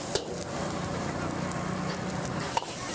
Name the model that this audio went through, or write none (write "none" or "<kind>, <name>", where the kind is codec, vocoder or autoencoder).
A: none